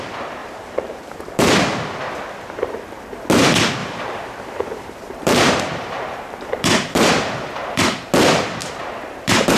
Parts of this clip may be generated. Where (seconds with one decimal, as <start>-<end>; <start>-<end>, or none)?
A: 0.4-1.5; 3.8-7.1; 8.6-9.6